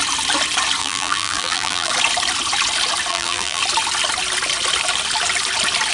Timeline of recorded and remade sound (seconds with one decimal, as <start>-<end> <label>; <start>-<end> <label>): 0.0-0.8 recorded; 0.8-1.9 remade; 1.9-3.1 recorded; 3.1-3.6 remade; 3.6-5.9 recorded